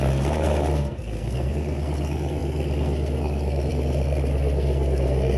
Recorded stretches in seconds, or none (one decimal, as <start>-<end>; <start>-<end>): none

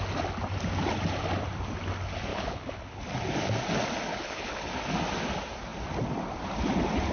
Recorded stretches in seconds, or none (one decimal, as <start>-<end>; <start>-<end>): 0.0-2.3; 3.0-4.1; 4.7-7.1

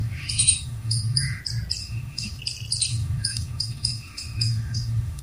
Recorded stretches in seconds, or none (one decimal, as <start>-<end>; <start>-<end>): 1.4-1.8; 2.4-2.9

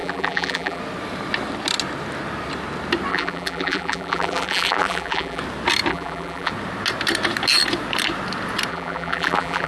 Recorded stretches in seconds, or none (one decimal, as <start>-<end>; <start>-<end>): 0.8-3.1; 5.4-5.9; 6.5-8.7